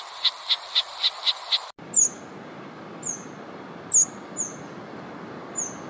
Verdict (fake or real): real